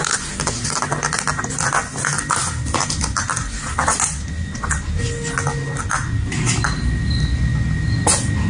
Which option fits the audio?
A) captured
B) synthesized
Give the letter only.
A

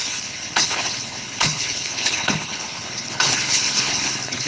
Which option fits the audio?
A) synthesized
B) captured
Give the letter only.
A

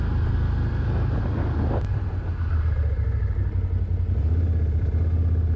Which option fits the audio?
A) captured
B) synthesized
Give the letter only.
A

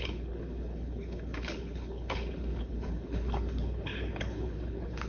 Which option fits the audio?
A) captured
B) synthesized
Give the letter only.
B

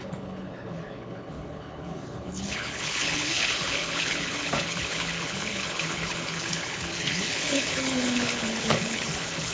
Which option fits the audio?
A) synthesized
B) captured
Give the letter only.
A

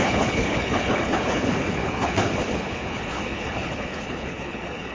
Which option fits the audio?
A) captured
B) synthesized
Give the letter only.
B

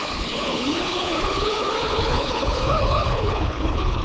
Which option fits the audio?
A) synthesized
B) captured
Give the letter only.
A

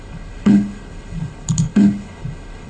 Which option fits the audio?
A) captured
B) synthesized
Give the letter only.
B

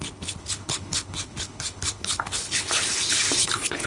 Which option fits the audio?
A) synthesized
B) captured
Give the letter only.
A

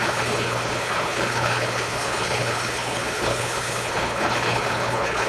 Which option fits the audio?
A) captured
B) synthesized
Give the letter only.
B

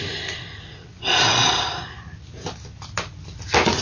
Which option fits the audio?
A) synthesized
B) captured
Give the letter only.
B